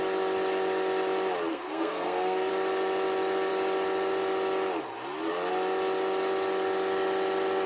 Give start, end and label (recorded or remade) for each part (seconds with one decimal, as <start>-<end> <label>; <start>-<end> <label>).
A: 0.0-1.5 recorded; 1.5-2.5 remade; 2.5-7.7 recorded